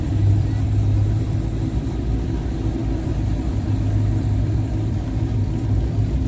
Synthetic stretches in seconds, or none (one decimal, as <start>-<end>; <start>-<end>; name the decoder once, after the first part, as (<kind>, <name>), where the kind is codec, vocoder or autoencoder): 0.0-6.3 (vocoder, BigVGAN v2)